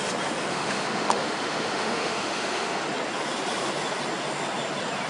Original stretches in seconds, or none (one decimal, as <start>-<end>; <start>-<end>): 0.0-0.5; 2.8-5.1